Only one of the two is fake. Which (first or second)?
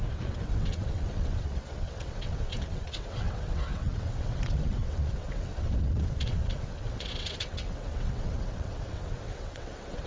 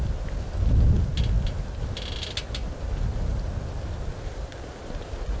first